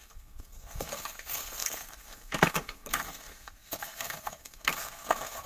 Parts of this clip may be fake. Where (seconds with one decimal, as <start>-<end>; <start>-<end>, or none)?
0.0-5.5